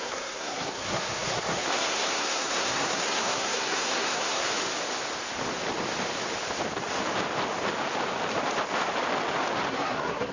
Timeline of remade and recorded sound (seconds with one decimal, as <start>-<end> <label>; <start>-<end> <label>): 0.0-4.5 remade; 4.5-9.7 recorded; 9.7-10.3 remade